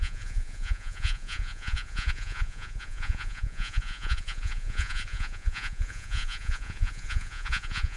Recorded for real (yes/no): no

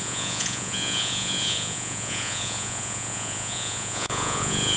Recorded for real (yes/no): no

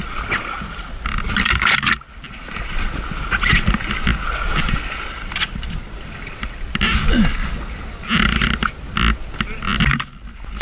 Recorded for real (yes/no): yes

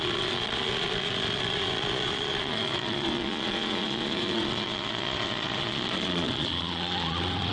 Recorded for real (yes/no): no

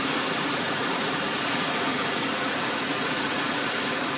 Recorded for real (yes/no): no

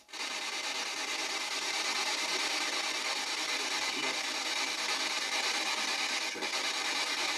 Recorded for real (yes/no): yes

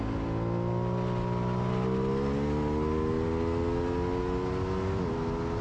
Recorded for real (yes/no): yes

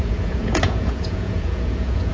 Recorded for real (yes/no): no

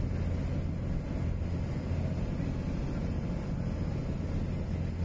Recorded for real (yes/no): yes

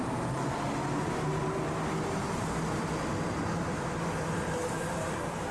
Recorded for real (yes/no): yes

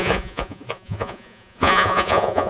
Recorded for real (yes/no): no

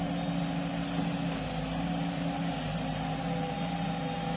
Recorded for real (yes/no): yes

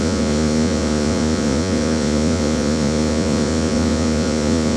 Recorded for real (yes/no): no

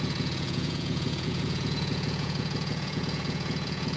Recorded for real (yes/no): no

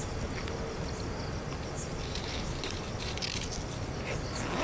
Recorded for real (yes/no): yes